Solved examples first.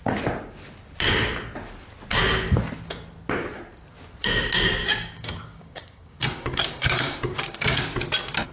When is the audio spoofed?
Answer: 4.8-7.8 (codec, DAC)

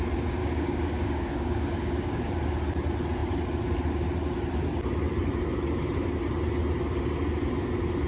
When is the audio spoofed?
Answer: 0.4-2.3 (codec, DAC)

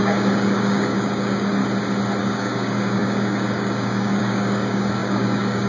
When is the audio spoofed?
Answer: 0.0-1.6 (codec, DAC); 2.2-5.7